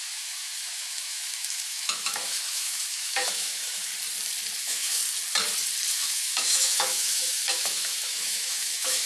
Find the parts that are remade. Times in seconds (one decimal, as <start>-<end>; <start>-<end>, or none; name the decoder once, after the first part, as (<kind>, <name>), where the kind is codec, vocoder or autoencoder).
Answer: 0.0-3.9 (autoencoder, DAC-VAE); 4.6-5.0; 5.9-9.1